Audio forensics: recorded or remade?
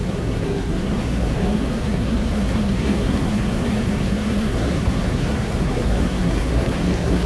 remade